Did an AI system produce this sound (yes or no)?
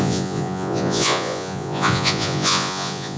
yes